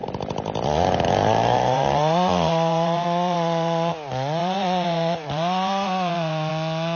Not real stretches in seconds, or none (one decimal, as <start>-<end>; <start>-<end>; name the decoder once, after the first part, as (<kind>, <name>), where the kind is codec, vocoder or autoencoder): 0.0-3.9 (vocoder, BigVGAN v2); 4.4-6.5